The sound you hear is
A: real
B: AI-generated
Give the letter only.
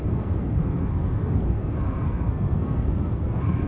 B